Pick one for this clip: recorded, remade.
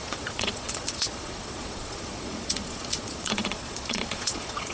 remade